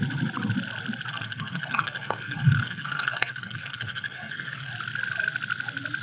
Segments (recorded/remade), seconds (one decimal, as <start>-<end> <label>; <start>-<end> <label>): 0.0-1.1 recorded; 1.1-4.7 remade; 4.7-6.0 recorded